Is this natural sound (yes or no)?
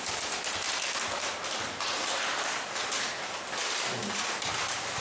yes